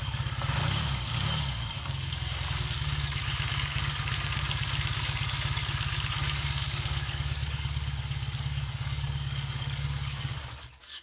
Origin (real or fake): fake